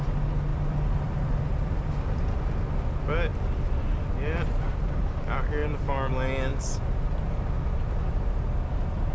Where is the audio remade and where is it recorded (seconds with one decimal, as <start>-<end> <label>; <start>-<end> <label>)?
0.0-0.5 recorded; 0.5-1.9 remade; 1.9-3.3 recorded; 3.3-4.1 remade; 4.1-5.6 recorded; 5.6-6.1 remade; 6.1-6.5 recorded; 6.5-7.2 remade; 7.2-9.1 recorded